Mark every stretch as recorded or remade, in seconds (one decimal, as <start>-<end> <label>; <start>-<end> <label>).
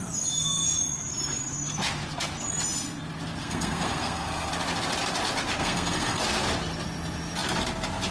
0.0-3.4 recorded; 3.4-4.5 remade; 4.5-5.6 recorded; 5.6-6.2 remade; 6.2-8.1 recorded